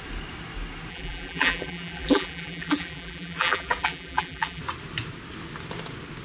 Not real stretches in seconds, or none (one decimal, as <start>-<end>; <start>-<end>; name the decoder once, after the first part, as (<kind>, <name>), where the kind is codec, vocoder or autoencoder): 0.9-4.6 (vocoder, BigVGAN v2)